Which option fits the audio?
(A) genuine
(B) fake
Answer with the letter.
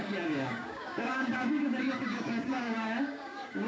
B